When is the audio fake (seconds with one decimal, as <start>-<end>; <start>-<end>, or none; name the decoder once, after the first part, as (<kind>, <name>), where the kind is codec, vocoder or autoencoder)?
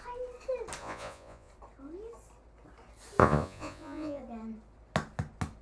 0.8-1.5 (vocoder, Vocos); 3.2-4.2